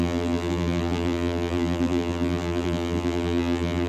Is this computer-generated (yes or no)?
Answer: yes